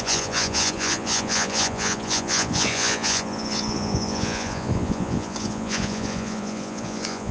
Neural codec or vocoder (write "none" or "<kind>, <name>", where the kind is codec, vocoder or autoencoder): vocoder, Vocos